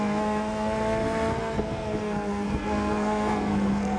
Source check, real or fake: fake